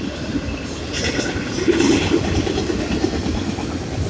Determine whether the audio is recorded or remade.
recorded